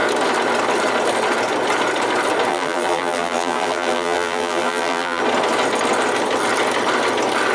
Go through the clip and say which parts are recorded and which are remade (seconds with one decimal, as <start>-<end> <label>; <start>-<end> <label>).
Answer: 0.0-2.5 recorded; 2.5-5.2 remade; 5.2-7.5 recorded